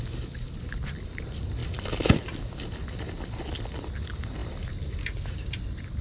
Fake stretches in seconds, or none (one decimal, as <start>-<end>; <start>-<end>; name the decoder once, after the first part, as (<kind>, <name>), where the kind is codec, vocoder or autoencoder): none